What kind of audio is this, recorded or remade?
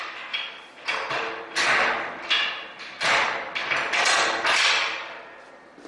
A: recorded